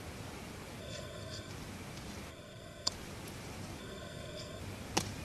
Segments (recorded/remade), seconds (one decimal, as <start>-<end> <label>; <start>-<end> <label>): 0.0-0.8 recorded; 0.8-1.5 remade; 1.5-2.3 recorded; 2.3-2.9 remade; 2.9-3.8 recorded; 3.8-4.6 remade; 4.6-5.2 recorded